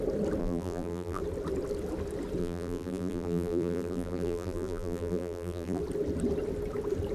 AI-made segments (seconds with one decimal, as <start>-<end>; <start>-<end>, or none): 0.4-1.2; 2.4-5.8